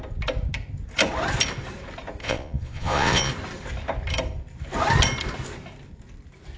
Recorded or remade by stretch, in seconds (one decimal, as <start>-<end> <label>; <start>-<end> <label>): 0.0-2.2 recorded; 2.2-3.3 remade; 3.3-6.6 recorded